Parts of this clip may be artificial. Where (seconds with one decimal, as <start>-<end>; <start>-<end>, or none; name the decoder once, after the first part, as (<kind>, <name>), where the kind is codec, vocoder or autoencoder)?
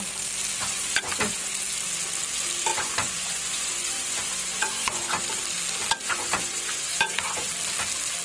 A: 0.6-1.5 (vocoder, Vocos); 2.7-5.2; 6.0-7.5